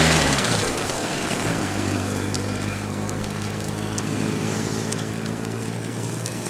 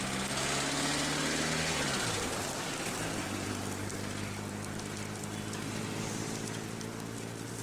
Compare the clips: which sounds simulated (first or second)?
first